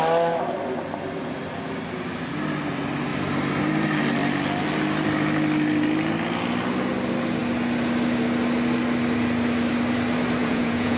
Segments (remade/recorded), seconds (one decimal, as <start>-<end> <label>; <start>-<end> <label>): 0.0-10.4 recorded; 10.4-11.0 remade